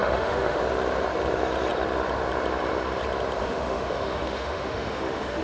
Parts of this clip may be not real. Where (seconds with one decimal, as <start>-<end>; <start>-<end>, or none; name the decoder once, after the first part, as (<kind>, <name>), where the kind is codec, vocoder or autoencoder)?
0.0-0.6 (autoencoder, DAC-VAE); 3.4-5.4